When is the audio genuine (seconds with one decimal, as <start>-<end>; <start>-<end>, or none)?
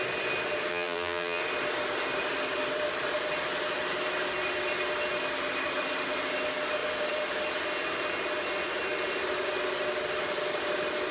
0.0-0.7; 1.4-11.1